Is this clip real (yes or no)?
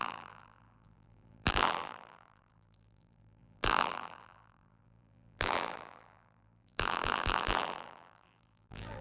no